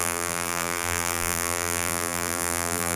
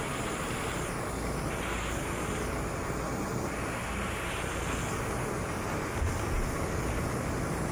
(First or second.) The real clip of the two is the second